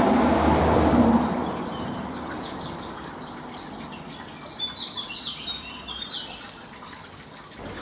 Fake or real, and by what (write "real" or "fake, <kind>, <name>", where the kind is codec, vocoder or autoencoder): fake, vocoder, BigVGAN v2